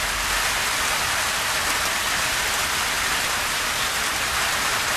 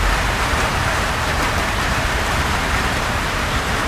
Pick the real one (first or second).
first